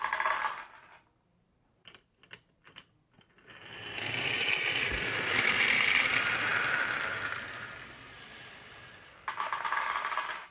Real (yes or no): yes